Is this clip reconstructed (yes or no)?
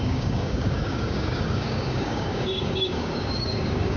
yes